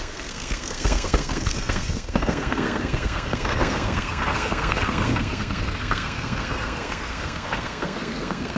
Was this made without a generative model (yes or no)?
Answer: no